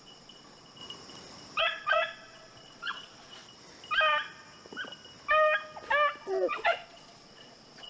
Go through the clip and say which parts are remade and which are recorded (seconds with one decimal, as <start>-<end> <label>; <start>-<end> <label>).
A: 0.0-0.8 remade; 0.8-1.6 recorded; 1.6-3.4 remade; 3.4-6.2 recorded; 6.2-7.9 remade